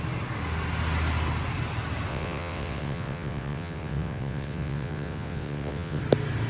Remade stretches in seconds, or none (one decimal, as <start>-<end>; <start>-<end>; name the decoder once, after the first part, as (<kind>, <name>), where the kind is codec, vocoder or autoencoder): 2.1-6.0 (vocoder, WaveNeXt)